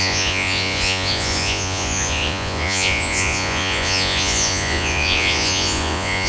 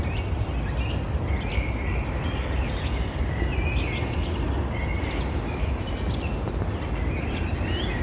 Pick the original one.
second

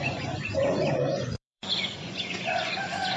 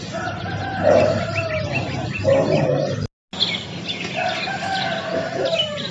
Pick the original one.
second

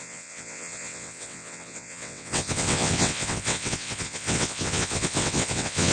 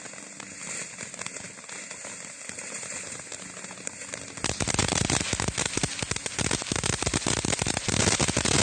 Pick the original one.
second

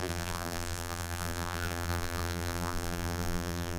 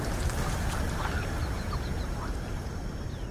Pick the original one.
second